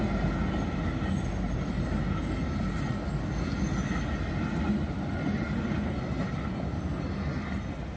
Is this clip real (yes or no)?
yes